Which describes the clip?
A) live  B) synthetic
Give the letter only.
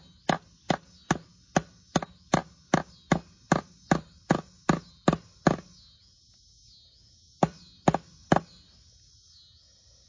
A